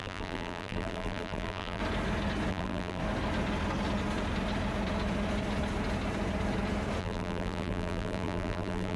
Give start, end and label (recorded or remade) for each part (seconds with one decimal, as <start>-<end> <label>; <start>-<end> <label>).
0.0-1.8 remade; 1.8-2.5 recorded; 2.5-3.0 remade; 3.0-7.0 recorded; 7.0-9.0 remade